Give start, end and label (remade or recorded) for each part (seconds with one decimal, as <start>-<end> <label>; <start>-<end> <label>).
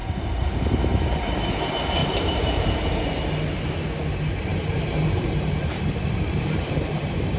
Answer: 0.0-1.6 remade; 1.6-2.0 recorded; 2.0-3.1 remade; 3.1-4.5 recorded; 4.5-7.4 remade